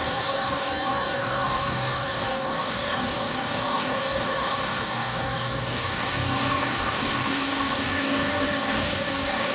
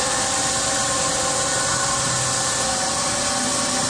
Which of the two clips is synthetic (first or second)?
first